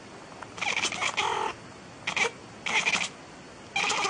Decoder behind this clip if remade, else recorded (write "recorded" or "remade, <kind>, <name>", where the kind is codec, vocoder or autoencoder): recorded